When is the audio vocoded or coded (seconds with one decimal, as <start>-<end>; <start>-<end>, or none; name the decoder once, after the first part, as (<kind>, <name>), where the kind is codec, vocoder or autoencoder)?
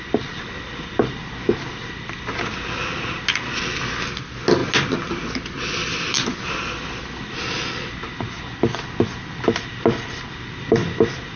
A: none